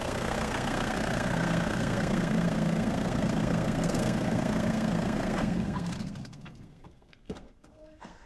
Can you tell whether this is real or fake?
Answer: fake